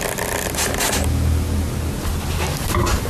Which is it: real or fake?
real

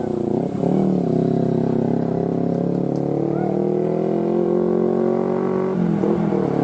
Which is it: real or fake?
real